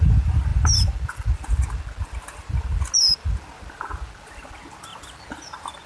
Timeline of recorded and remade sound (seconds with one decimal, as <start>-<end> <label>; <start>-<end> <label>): 0.0-5.9 recorded